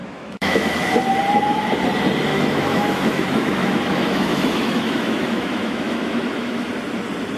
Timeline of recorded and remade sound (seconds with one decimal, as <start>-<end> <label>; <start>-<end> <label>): 0.0-0.9 remade; 0.9-2.3 recorded; 2.3-6.7 remade; 6.7-7.4 recorded